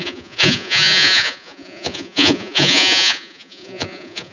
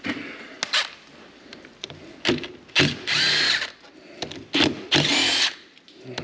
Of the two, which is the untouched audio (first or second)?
second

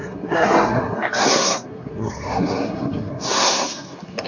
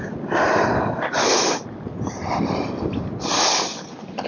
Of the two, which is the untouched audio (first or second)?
second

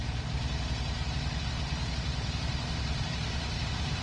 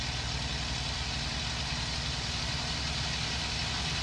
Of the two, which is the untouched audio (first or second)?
second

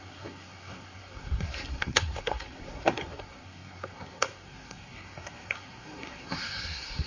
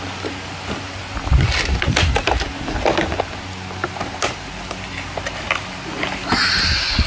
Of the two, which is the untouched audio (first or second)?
second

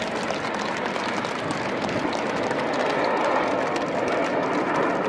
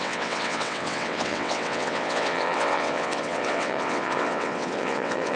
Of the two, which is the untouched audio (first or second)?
first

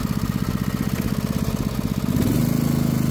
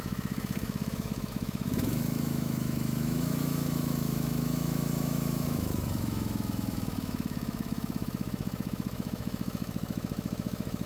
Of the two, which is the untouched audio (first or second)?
first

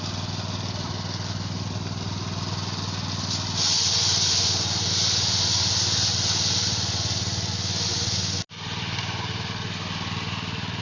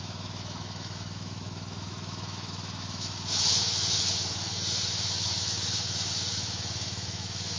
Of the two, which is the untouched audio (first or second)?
first